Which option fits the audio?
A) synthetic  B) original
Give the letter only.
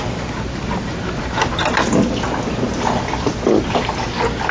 B